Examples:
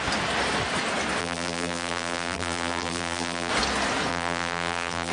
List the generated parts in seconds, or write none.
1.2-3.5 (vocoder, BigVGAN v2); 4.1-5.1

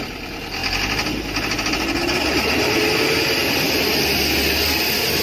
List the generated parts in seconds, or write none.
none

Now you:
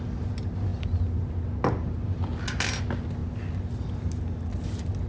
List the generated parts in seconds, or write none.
none